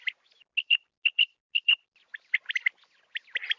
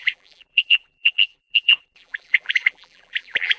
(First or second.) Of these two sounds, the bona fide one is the first